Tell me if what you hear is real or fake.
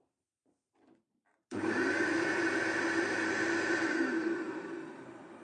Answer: fake